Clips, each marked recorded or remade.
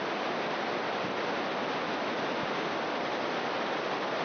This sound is recorded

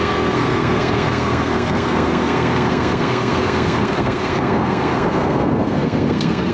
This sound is remade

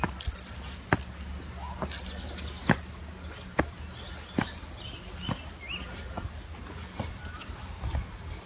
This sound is recorded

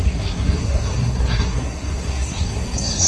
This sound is remade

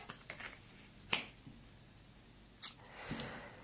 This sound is recorded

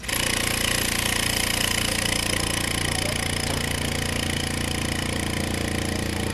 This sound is recorded